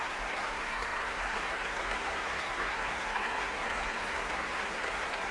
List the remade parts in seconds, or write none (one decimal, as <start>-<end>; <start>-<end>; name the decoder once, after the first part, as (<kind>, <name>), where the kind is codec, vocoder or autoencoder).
0.0-5.3 (codec, SNAC)